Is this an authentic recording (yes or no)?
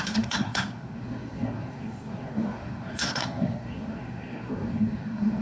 no